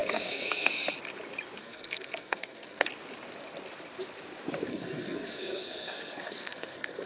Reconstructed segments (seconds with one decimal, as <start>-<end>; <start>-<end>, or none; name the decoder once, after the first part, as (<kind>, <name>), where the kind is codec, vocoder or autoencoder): 0.0-0.7 (codec, SNAC); 1.6-2.9; 4.7-7.1